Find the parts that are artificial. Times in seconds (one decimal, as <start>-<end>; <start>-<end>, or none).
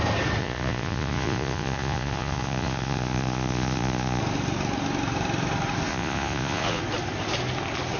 0.4-4.2; 5.9-6.8